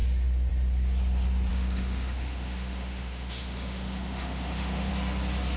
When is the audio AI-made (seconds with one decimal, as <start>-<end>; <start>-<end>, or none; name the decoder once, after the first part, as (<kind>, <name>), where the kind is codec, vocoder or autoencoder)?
1.5-4.9 (autoencoder, DAC-VAE)